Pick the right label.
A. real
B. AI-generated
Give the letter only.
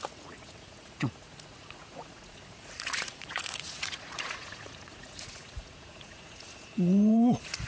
B